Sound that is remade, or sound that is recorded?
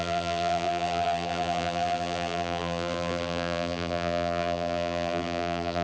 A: remade